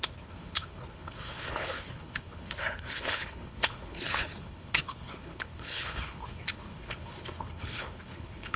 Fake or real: fake